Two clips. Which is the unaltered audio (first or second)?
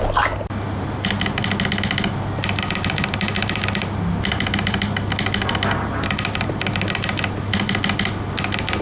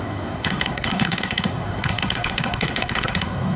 first